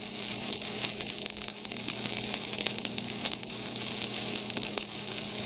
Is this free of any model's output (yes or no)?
no